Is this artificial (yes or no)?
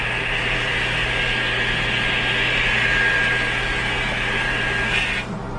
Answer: no